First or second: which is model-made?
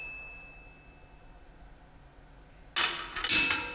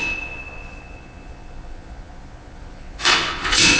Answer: second